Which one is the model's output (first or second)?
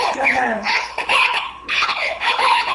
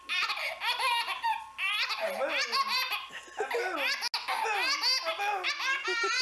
first